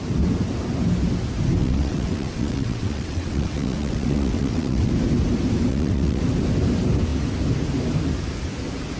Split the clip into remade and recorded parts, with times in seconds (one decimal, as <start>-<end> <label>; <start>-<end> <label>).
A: 0.0-1.6 recorded; 1.6-4.9 remade; 4.9-5.7 recorded; 5.7-6.2 remade; 6.2-9.0 recorded